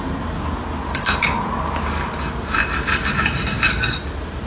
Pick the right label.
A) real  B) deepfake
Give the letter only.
A